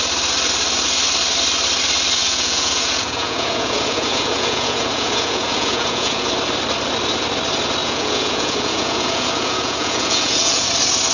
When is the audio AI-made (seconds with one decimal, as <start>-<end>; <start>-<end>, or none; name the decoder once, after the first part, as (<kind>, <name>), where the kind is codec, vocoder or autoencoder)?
2.2-6.3 (vocoder, Vocos); 7.8-10.7